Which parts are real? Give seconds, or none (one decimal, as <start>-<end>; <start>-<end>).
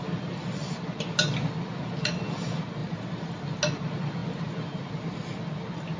0.0-2.8; 3.3-6.0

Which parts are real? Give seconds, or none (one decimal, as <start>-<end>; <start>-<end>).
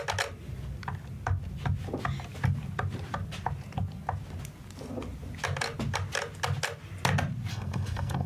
0.0-7.5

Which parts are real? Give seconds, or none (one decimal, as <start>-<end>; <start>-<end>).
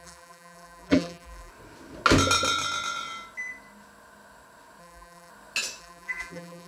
1.5-4.8; 5.3-5.8